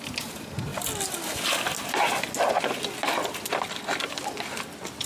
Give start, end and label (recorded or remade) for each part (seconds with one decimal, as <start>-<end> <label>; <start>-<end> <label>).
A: 0.0-5.1 recorded